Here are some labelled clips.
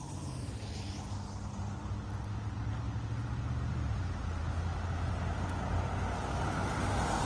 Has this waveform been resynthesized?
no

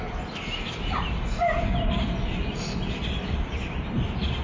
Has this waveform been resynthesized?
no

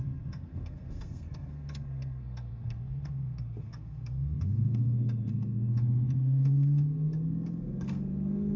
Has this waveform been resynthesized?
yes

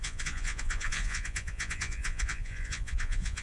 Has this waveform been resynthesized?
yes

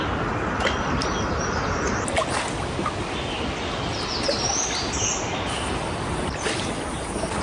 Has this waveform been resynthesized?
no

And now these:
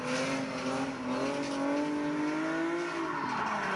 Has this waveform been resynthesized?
no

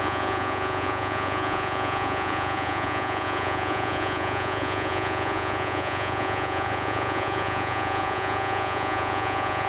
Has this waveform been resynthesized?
yes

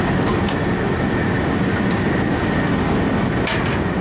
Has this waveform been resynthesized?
no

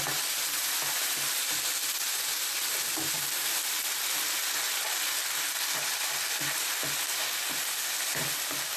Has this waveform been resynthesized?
no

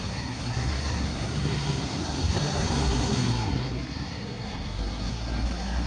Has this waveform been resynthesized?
yes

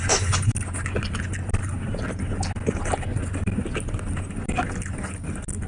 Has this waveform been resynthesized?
no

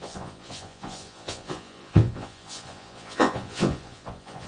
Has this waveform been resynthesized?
yes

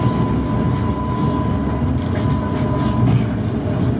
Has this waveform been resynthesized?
no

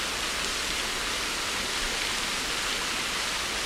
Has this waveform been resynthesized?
no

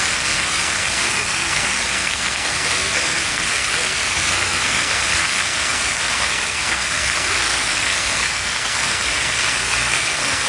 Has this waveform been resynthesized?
yes